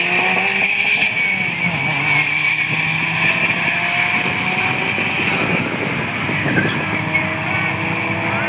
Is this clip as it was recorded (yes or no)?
yes